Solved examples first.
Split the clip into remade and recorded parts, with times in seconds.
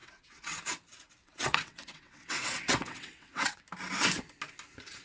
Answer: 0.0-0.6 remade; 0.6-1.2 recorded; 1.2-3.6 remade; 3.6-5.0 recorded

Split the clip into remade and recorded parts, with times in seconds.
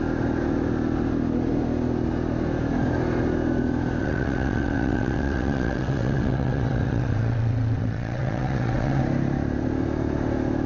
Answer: 0.0-4.0 recorded; 4.0-9.0 remade; 9.0-10.7 recorded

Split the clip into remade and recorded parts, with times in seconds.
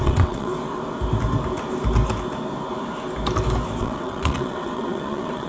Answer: 0.0-0.5 remade; 0.5-3.8 recorded; 3.8-5.5 remade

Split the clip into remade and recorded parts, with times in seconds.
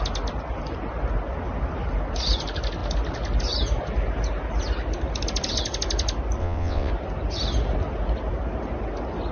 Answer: 0.0-6.4 recorded; 6.4-6.9 remade; 6.9-9.3 recorded